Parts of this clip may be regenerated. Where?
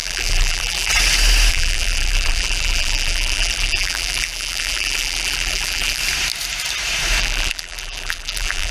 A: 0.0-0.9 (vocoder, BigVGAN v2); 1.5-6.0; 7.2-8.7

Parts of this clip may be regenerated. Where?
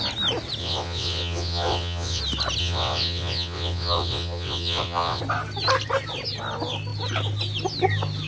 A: 0.6-2.2 (vocoder, WaveNeXt); 2.6-5.2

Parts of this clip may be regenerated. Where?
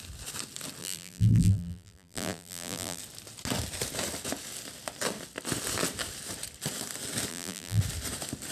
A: 0.8-3.0 (vocoder, BigVGAN v2); 7.3-7.8